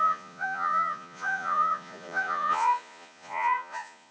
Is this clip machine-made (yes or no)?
yes